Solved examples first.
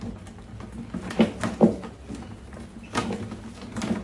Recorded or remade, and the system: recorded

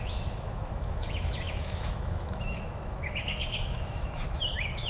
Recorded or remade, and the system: remade, autoencoder, DAC-VAE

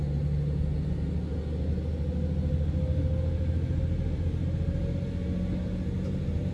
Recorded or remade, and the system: recorded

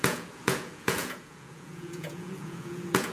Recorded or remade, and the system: remade, vocoder, Vocos